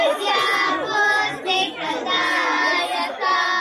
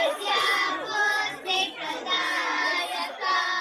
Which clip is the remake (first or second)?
second